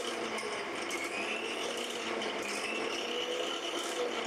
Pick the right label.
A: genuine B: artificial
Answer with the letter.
A